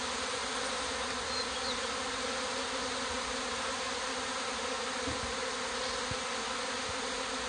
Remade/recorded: recorded